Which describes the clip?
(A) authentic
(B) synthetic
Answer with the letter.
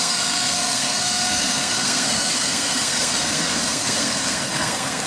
B